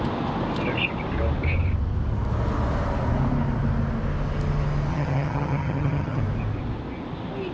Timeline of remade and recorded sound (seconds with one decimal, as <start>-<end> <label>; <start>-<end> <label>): 0.0-4.9 recorded; 4.9-6.2 remade; 6.2-7.5 recorded